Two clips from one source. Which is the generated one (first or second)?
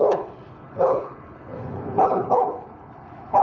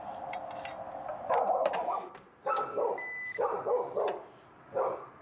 first